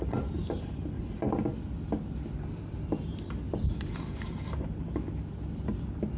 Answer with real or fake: real